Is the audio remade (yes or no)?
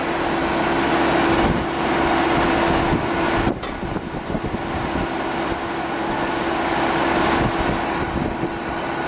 no